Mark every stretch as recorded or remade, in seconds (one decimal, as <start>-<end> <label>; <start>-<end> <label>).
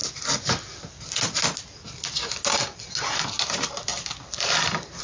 0.0-3.9 recorded; 3.9-5.0 remade